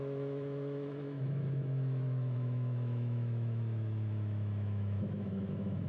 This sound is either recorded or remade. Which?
remade